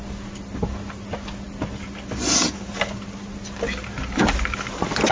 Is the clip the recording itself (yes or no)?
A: yes